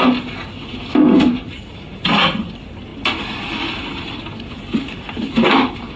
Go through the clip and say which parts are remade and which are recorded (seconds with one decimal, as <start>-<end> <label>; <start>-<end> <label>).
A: 0.0-6.0 recorded